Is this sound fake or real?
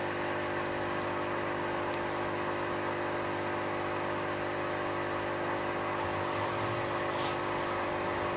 real